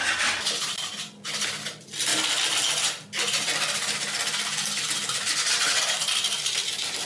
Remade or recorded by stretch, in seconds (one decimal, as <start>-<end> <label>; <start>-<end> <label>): 0.0-7.0 recorded